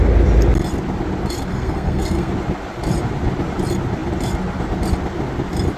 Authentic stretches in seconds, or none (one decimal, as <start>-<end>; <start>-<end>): 0.0-1.5; 2.3-5.8